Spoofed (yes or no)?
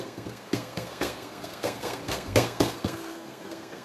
yes